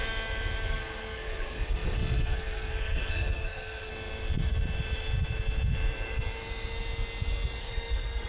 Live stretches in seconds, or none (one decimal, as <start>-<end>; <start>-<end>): 0.0-0.7; 3.9-7.6